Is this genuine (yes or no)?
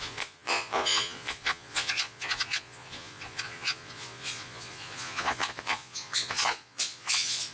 no